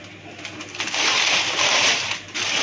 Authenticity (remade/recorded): recorded